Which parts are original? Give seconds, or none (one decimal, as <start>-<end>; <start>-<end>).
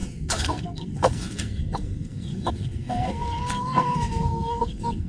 none